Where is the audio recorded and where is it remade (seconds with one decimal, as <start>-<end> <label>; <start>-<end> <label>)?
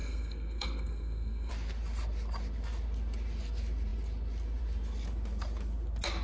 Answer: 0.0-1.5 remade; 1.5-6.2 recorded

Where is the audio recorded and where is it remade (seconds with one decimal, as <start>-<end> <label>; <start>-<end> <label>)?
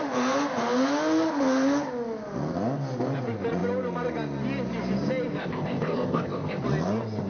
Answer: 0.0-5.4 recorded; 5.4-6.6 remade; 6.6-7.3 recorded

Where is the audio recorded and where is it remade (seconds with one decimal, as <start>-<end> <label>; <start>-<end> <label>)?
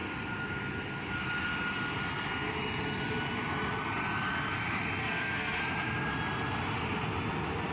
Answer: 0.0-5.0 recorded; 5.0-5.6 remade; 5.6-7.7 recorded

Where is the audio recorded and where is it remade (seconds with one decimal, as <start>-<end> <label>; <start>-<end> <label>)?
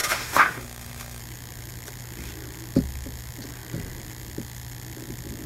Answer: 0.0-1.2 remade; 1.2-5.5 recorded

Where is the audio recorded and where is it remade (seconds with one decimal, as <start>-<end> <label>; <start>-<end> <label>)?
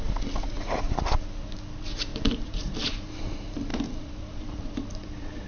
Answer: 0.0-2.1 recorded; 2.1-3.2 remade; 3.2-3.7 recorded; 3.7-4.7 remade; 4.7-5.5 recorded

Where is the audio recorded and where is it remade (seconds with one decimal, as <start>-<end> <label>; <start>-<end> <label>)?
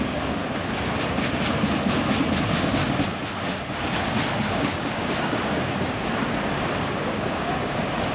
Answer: 0.0-0.4 remade; 0.4-2.4 recorded; 2.4-2.8 remade; 2.8-4.5 recorded; 4.5-6.1 remade; 6.1-6.9 recorded; 6.9-8.1 remade